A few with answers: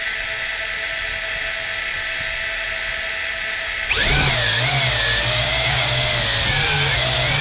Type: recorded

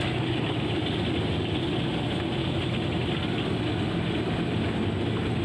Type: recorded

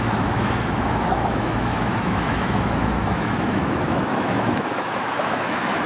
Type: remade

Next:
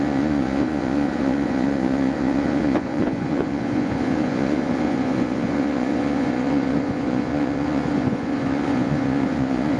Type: remade